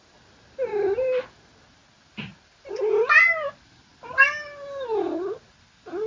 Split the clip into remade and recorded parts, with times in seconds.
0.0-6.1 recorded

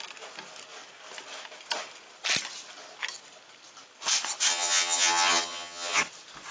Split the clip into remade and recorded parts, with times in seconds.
0.0-4.5 recorded; 4.5-6.0 remade; 6.0-6.5 recorded

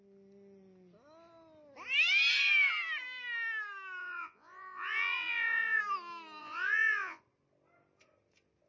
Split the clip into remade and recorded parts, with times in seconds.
0.0-4.0 recorded; 4.0-5.8 remade; 5.8-6.4 recorded; 6.4-7.2 remade; 7.2-8.7 recorded

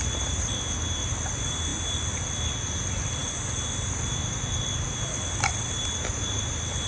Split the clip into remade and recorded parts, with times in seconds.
0.0-6.9 recorded

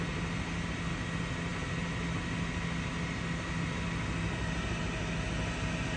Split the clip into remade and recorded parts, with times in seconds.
0.0-6.0 recorded

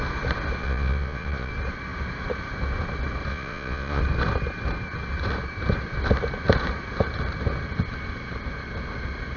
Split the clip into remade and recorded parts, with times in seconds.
0.0-0.6 recorded; 0.6-1.5 remade; 1.5-3.3 recorded; 3.3-4.0 remade; 4.0-9.4 recorded